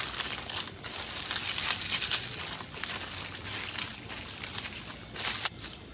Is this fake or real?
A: real